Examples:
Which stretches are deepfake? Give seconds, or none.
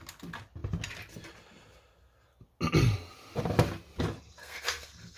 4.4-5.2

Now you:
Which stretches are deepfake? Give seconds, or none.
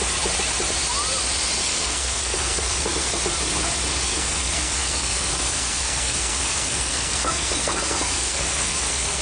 1.6-3.2; 4.0-9.2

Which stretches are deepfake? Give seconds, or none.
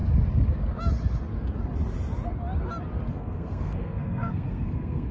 3.1-5.1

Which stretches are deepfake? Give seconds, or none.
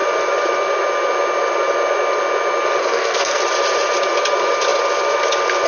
2.8-3.4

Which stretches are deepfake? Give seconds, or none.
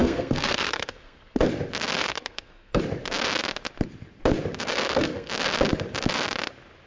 0.0-1.4; 2.0-2.8; 4.7-5.3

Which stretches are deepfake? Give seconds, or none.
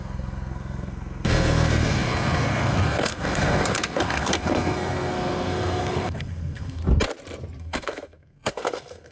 0.0-6.8; 7.6-9.1